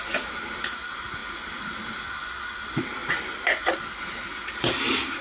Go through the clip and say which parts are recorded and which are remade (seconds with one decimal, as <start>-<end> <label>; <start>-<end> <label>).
0.0-5.2 recorded